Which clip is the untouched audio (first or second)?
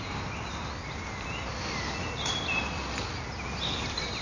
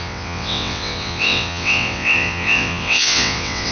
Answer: first